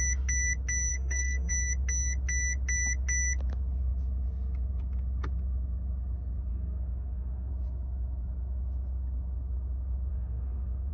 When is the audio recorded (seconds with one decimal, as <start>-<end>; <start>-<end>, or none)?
0.0-0.9; 1.5-6.5; 7.5-10.1